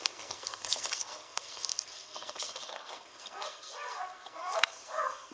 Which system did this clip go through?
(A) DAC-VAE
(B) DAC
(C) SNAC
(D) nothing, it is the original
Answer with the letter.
C